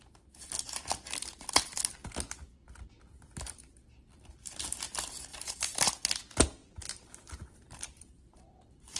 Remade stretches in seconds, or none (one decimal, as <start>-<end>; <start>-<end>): 5.3-5.9; 6.6-8.6